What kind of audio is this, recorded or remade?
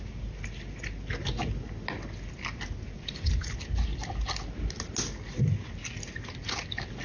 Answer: recorded